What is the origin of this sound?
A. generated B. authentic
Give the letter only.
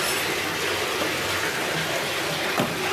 B